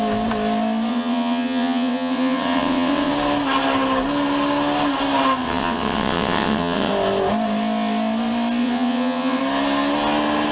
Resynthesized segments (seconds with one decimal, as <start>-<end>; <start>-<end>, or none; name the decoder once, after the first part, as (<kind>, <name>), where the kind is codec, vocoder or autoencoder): 0.9-3.1 (vocoder, WaveNeXt); 5.4-6.9; 8.6-9.4